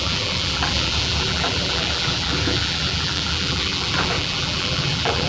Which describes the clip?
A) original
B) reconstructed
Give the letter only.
B